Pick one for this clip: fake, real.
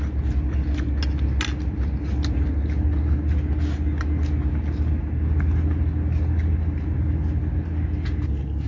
real